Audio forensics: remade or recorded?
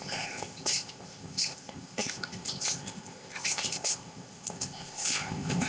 remade